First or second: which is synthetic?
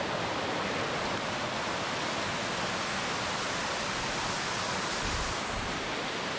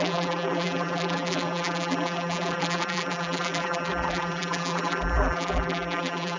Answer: second